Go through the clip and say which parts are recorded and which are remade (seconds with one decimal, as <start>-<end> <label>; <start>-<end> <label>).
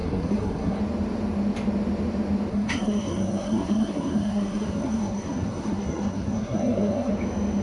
0.0-0.8 remade; 0.8-2.5 recorded; 2.5-7.1 remade; 7.1-7.6 recorded